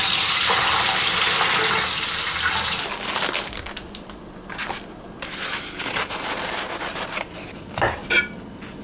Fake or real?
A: real